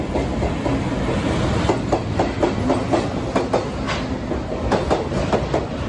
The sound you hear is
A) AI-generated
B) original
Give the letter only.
B